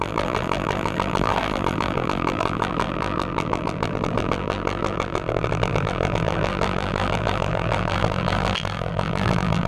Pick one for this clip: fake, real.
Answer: fake